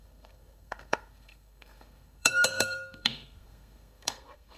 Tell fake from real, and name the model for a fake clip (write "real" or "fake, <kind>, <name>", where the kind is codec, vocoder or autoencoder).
fake, codec, SNAC